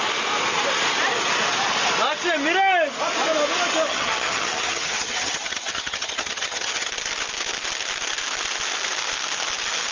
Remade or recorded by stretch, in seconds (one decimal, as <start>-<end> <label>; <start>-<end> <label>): 0.0-3.9 recorded; 3.9-6.9 remade; 6.9-9.9 recorded